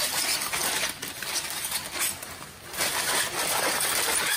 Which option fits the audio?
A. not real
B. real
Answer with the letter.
B